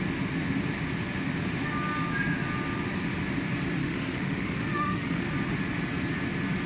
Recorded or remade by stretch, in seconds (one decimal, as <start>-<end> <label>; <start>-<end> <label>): 0.0-3.8 recorded; 3.8-5.3 remade; 5.3-6.7 recorded